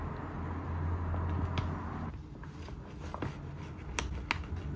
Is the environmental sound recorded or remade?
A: recorded